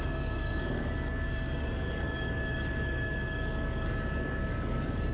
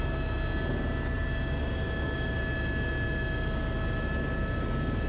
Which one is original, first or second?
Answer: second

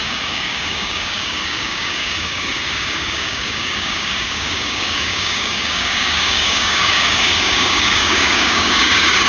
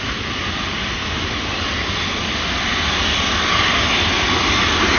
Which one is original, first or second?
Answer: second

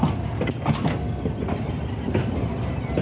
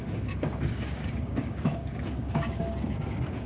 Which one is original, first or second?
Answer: first